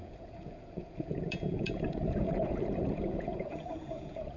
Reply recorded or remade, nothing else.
remade